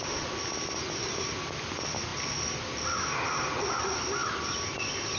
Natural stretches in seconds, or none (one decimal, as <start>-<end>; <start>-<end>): 0.0-5.2

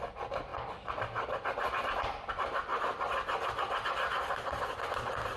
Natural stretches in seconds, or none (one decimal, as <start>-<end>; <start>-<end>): 0.0-5.4

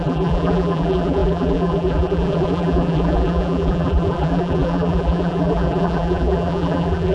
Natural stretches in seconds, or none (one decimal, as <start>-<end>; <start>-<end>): none

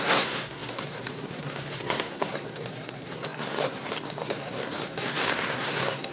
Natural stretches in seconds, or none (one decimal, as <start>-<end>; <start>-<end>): none

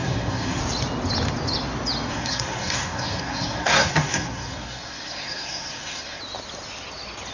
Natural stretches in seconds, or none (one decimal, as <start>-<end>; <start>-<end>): 0.6-2.1; 6.2-7.3

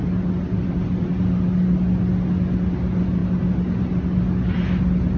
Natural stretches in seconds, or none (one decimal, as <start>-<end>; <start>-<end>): 0.0-5.2

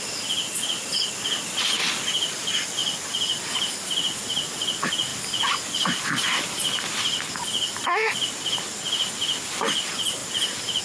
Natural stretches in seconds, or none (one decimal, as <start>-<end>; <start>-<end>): 0.0-2.8; 3.9-10.2

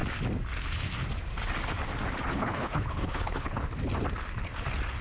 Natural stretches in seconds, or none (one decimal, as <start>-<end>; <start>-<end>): 0.0-2.3; 3.7-5.0